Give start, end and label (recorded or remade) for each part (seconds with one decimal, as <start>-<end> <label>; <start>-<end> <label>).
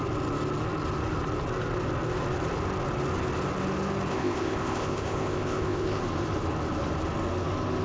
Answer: 0.0-4.1 recorded; 4.1-6.0 remade; 6.0-7.8 recorded